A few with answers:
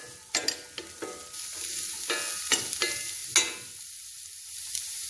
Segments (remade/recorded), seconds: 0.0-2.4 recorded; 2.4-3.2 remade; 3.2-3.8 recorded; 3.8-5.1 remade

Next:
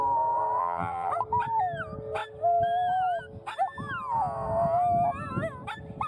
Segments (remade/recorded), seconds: 0.0-0.6 recorded; 0.6-1.1 remade; 1.1-6.1 recorded

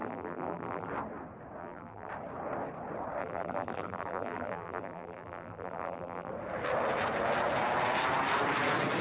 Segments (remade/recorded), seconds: 0.0-0.9 remade; 0.9-1.6 recorded; 1.6-2.1 remade; 2.1-3.2 recorded; 3.2-6.3 remade; 6.3-9.0 recorded

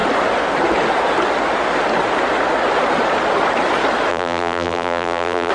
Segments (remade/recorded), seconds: 0.0-4.1 recorded; 4.1-5.5 remade

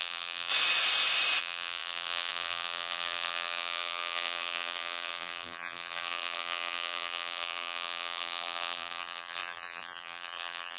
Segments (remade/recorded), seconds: 0.0-0.5 remade; 0.5-1.4 recorded; 1.4-10.8 remade